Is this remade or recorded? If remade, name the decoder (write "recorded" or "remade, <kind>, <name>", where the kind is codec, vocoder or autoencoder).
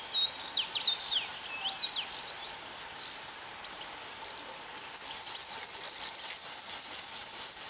recorded